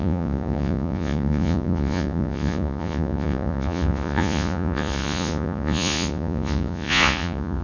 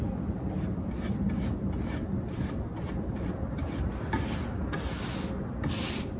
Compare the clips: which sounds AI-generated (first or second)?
first